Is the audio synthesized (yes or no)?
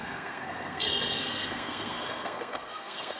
yes